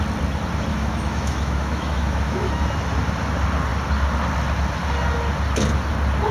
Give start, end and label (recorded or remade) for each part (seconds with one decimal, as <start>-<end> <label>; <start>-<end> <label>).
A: 0.0-0.7 recorded; 0.7-2.5 remade; 2.5-6.3 recorded